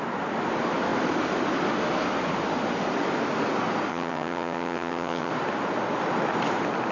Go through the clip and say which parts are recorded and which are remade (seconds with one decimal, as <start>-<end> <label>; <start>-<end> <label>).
0.0-3.9 recorded; 3.9-5.3 remade; 5.3-6.9 recorded